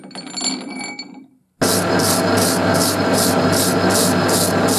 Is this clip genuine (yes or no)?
yes